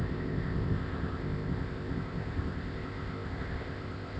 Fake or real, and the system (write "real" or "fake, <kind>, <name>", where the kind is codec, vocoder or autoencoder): fake, codec, ZipCodec